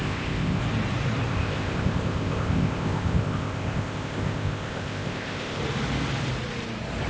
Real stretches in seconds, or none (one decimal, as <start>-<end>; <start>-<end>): 0.6-1.3; 5.6-7.1